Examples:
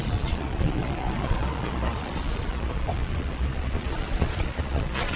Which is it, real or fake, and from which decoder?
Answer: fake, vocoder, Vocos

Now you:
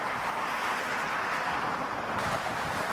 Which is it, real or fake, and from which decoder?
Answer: real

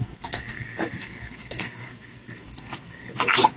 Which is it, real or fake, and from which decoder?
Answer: fake, codec, SNAC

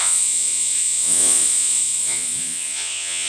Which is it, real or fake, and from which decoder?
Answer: fake, vocoder, Vocos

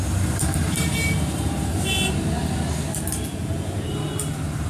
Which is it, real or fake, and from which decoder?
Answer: real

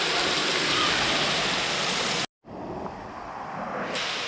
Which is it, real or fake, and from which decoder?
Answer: real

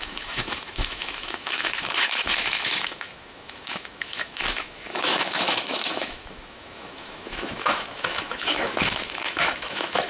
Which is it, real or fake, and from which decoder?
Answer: fake, autoencoder, DAC-VAE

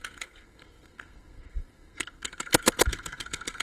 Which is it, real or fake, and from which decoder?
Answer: fake, codec, SNAC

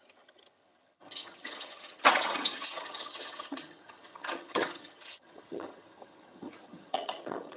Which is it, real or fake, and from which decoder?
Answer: fake, vocoder, HiFi-GAN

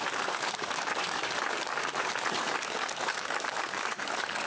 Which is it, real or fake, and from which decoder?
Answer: fake, codec, DAC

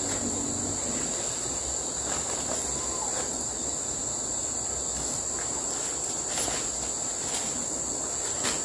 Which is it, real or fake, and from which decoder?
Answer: real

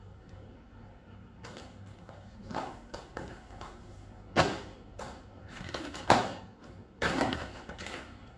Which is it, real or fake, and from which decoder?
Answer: fake, codec, SNAC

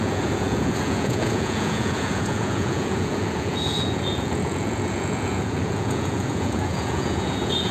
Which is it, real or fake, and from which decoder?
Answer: fake, vocoder, Vocos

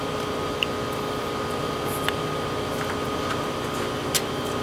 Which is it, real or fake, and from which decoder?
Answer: real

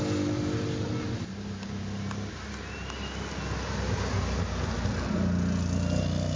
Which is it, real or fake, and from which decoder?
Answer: real